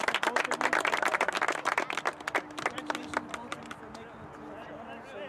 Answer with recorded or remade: recorded